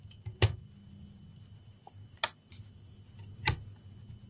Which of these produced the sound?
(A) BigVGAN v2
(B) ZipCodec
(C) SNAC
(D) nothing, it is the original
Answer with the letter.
D